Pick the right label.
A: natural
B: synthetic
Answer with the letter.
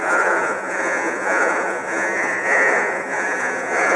B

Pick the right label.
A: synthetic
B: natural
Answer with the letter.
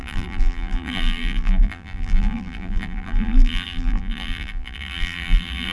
A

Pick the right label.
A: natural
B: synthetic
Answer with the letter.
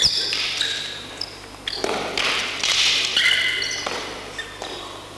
A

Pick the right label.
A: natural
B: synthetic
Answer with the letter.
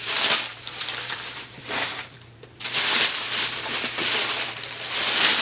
B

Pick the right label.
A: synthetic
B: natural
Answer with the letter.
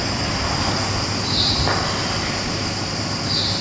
B